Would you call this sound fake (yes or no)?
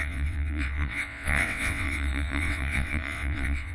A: yes